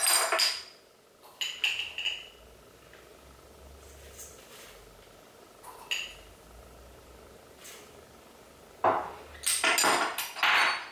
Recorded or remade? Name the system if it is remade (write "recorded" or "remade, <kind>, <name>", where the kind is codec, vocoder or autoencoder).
recorded